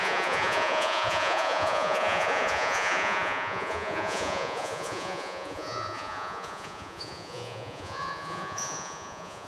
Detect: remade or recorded remade